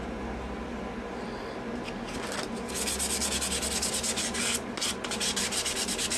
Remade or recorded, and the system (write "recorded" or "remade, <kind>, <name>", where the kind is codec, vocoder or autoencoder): recorded